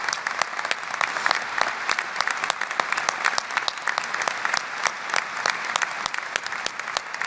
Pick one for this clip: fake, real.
real